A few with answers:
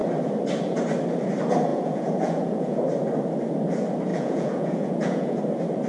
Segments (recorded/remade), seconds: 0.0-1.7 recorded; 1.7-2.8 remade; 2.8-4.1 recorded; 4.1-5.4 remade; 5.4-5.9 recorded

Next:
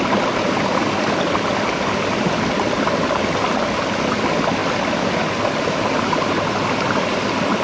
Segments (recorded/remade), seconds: 0.0-7.6 recorded

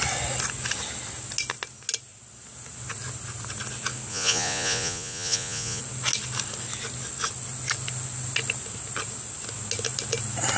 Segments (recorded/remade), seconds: 0.0-4.1 recorded; 4.1-5.8 remade; 5.8-10.6 recorded

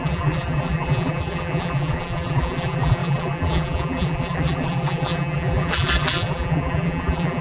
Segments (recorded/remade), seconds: 0.0-7.4 remade

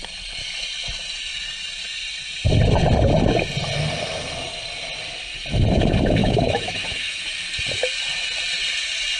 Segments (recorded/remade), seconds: 0.0-6.2 recorded; 6.2-7.2 remade; 7.2-9.2 recorded